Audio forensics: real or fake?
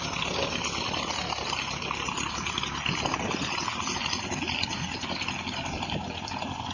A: real